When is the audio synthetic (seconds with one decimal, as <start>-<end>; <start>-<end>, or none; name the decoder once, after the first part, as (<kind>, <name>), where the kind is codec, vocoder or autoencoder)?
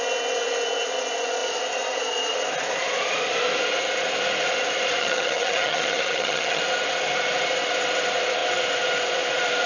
5.0-6.6 (vocoder, HiFi-GAN)